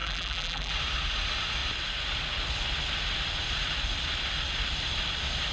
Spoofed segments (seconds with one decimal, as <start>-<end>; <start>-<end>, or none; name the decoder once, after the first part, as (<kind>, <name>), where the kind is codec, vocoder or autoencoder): 0.0-0.7 (vocoder, BigVGAN v2)

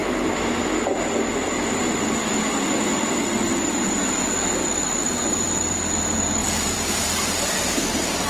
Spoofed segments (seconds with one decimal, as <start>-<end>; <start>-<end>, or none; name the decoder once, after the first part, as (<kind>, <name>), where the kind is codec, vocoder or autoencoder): 6.4-7.0 (vocoder, BigVGAN v2)

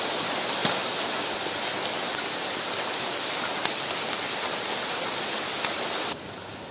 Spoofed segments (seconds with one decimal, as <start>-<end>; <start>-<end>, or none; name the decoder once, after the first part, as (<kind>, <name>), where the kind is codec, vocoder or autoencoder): none

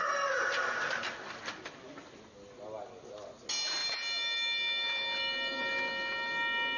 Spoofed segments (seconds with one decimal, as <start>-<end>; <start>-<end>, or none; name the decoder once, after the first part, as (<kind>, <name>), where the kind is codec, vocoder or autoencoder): none